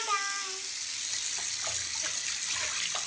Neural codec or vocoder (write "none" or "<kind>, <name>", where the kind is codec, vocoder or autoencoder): none